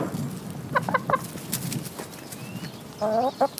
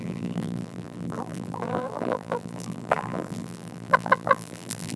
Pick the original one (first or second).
first